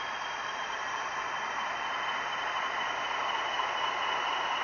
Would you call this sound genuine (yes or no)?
yes